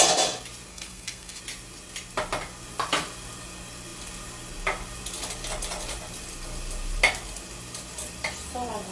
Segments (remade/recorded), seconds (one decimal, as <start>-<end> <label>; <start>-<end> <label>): 0.0-0.7 recorded; 0.7-1.4 remade; 1.4-8.9 recorded